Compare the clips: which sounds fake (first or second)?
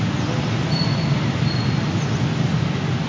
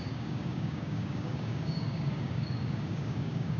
second